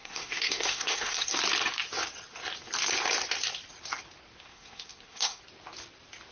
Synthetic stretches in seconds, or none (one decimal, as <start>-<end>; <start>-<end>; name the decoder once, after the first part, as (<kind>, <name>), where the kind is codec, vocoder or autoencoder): 0.0-1.3 (codec, SNAC); 4.5-5.4